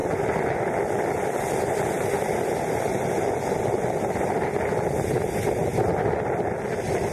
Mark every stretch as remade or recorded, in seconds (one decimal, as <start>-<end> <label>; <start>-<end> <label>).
0.0-4.1 remade; 4.1-7.1 recorded